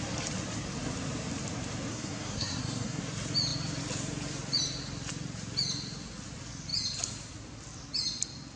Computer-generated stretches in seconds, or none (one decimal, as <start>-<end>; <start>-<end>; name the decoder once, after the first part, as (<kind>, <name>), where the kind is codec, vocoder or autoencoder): 1.9-3.0 (codec, SNAC)